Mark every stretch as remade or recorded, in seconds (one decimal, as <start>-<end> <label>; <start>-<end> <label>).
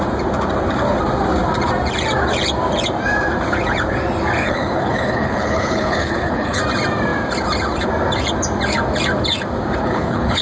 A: 0.0-4.4 recorded; 4.4-6.6 remade; 6.6-9.8 recorded; 9.8-10.4 remade